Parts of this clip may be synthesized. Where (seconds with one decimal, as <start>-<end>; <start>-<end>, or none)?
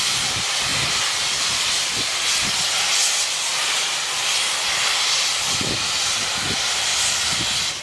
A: 0.0-3.2; 5.4-7.8